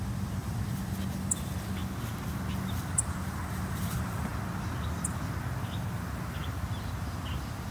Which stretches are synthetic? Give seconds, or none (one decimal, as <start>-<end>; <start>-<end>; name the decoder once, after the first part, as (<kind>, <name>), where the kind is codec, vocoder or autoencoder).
0.0-1.8 (vocoder, BigVGAN v2); 2.8-4.3